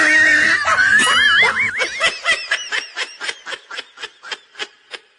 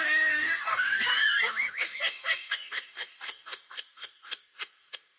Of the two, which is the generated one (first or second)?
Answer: second